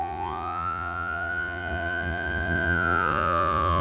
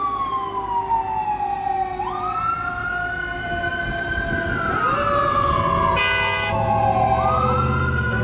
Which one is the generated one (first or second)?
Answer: first